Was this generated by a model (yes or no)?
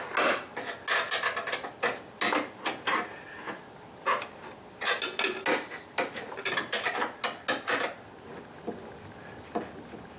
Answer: no